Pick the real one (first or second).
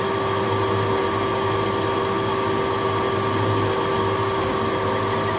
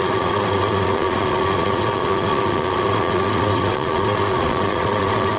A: first